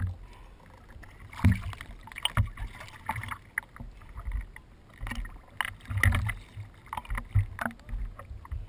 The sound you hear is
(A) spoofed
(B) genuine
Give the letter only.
B